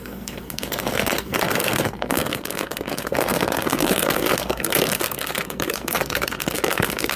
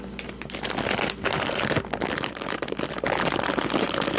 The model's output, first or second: first